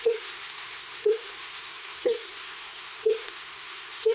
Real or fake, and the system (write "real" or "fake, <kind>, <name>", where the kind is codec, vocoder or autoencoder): fake, codec, SNAC